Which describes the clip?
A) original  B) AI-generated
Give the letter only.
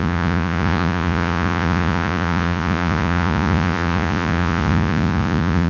B